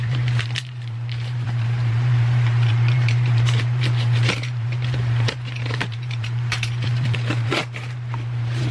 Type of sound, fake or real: fake